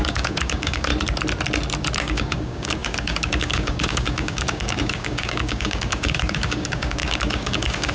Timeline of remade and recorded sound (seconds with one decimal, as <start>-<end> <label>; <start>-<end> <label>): 0.0-0.9 remade; 0.9-2.0 recorded; 2.0-7.9 remade

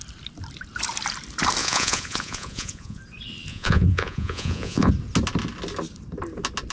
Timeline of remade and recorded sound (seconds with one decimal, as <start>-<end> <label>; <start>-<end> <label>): 0.0-1.6 recorded; 1.6-3.0 remade; 3.0-3.5 recorded; 3.5-4.9 remade; 4.9-6.7 recorded